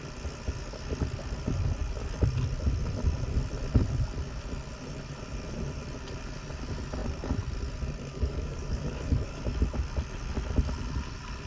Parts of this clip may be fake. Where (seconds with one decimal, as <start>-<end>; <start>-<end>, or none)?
8.1-9.4